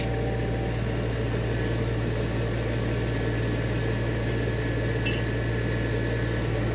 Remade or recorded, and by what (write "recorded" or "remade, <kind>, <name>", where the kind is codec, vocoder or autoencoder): recorded